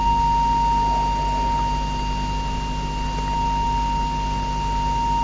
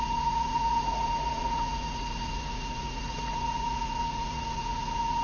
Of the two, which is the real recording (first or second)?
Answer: first